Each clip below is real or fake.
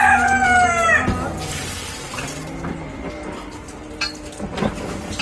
real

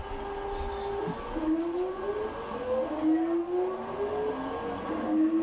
real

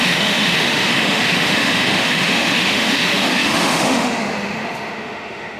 fake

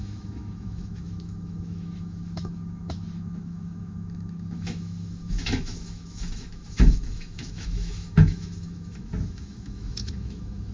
fake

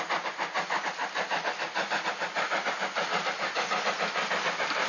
real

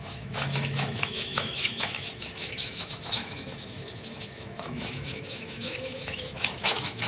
fake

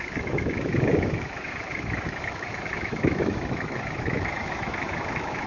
fake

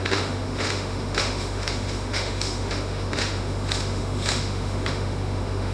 fake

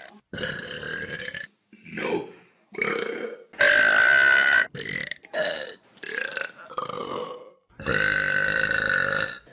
real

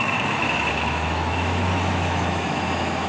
fake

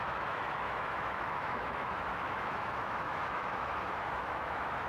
fake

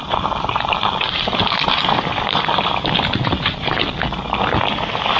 real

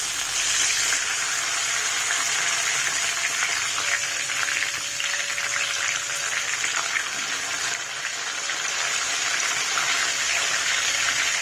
real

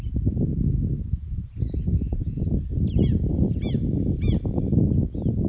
real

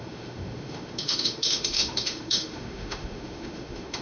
fake